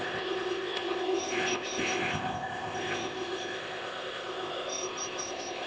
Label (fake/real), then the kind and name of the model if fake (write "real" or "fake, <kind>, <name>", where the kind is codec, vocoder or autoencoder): fake, codec, ZipCodec